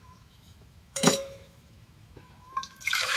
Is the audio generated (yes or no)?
yes